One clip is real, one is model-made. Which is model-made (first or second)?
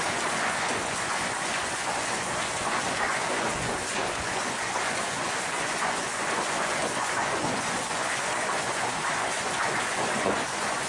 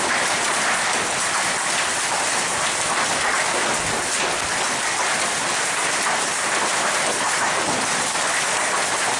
first